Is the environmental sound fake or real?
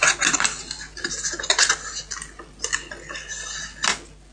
real